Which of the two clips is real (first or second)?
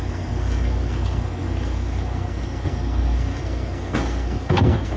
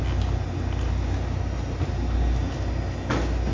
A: second